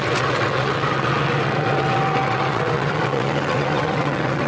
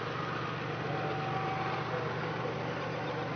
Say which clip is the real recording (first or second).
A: second